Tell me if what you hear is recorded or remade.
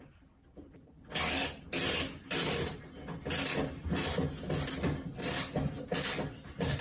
recorded